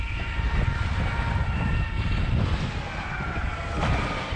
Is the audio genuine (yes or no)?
yes